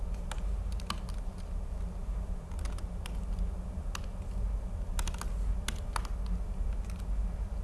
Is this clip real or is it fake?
real